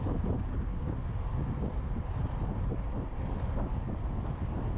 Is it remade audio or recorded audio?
recorded